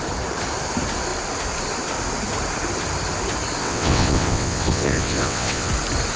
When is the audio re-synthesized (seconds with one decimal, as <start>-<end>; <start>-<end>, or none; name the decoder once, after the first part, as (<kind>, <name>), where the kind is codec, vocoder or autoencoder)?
3.6-5.7 (vocoder, WaveNeXt)